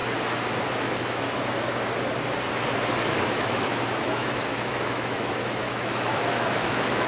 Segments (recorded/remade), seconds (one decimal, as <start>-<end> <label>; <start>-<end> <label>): 0.0-3.1 recorded; 3.1-7.1 remade